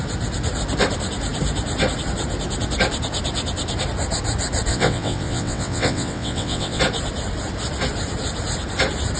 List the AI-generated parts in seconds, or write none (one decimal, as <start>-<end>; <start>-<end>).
4.7-6.8